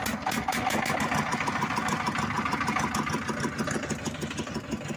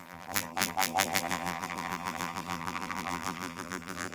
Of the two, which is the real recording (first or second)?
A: first